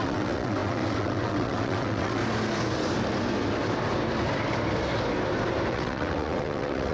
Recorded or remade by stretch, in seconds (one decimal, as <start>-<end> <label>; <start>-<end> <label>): 0.0-2.2 remade; 2.2-5.7 recorded; 5.7-6.9 remade